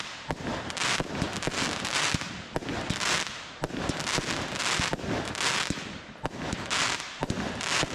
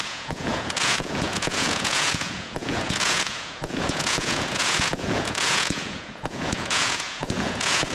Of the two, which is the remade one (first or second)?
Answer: second